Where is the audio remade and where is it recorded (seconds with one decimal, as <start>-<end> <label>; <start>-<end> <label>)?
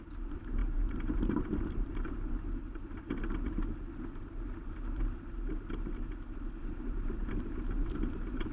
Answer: 0.0-0.6 recorded; 0.6-1.9 remade; 1.9-4.6 recorded; 4.6-5.3 remade; 5.3-6.6 recorded; 6.6-7.3 remade; 7.3-8.5 recorded